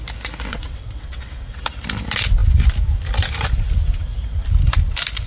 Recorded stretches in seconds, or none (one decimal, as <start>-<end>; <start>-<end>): 0.0-0.5; 1.6-5.3